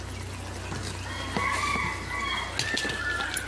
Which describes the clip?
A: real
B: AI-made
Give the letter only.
A